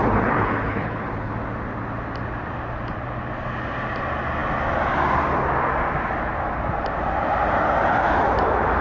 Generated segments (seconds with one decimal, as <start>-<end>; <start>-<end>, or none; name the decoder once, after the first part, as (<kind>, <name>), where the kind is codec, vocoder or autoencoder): 0.0-1.3 (codec, HILCodec)